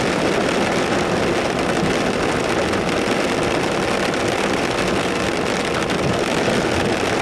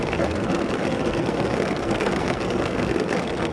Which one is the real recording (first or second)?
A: first